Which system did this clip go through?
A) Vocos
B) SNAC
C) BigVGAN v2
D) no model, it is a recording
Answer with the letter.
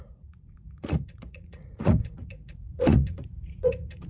A